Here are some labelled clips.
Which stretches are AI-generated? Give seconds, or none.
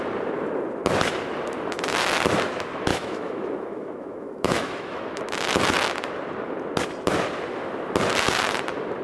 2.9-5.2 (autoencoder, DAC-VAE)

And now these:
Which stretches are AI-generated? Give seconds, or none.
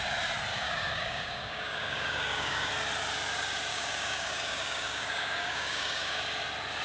0.5-2.7 (codec, DAC); 3.7-6.2